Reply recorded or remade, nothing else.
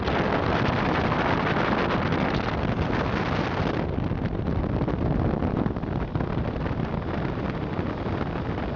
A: recorded